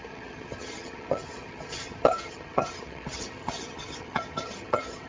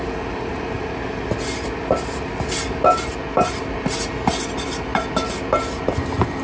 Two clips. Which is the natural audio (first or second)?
second